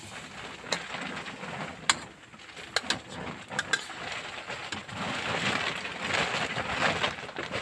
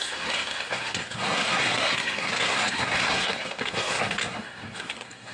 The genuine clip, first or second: first